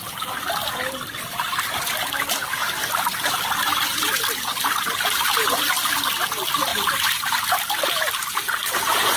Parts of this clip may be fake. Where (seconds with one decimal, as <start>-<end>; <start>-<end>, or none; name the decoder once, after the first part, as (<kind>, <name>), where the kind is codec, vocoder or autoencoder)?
none